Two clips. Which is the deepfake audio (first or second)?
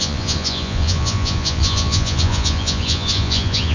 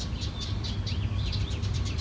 first